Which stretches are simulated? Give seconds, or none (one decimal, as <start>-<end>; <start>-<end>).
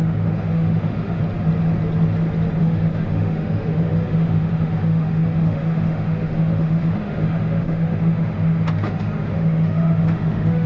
0.0-1.2; 2.6-10.7